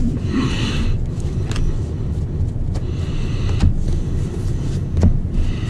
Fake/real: real